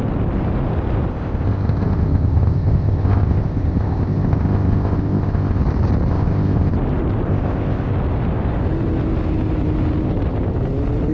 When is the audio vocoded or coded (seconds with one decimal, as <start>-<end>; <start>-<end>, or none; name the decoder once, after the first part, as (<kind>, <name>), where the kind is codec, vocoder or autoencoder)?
1.1-5.6 (codec, ZipCodec); 6.1-6.7; 7.3-7.9

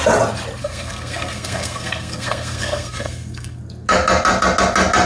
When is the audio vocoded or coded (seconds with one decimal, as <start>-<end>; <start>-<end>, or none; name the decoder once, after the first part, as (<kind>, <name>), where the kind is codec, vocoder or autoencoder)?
0.6-3.6 (codec, SNAC)

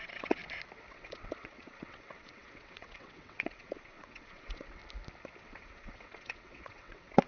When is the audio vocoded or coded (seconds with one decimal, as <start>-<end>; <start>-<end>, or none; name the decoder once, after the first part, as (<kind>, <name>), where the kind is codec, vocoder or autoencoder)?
0.0-0.4 (vocoder, WaveNeXt); 0.9-4.8; 5.4-7.3

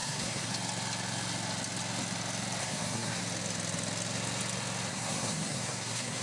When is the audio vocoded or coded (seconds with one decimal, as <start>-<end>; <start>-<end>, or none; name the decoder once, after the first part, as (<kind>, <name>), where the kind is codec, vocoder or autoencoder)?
0.0-0.5 (codec, SNAC); 2.6-3.2; 4.9-6.2

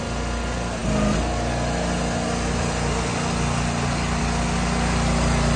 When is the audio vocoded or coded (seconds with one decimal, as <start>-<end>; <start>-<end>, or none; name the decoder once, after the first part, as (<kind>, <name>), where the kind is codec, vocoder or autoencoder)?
none

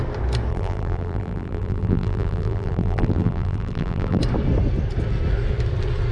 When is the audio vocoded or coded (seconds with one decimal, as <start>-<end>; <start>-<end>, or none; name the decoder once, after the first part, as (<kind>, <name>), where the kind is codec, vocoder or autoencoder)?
0.5-4.2 (vocoder, BigVGAN v2)